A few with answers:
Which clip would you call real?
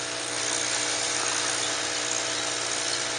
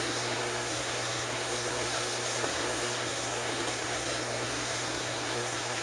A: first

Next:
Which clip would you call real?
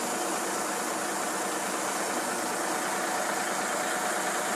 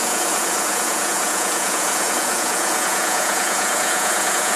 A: first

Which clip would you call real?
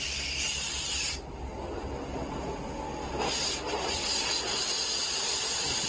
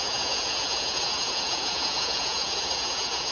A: first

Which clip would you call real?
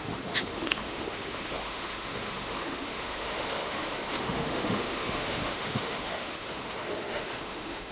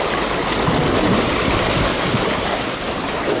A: second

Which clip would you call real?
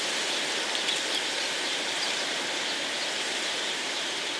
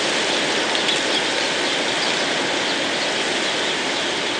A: second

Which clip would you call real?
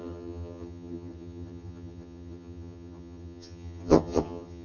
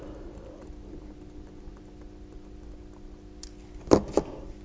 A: second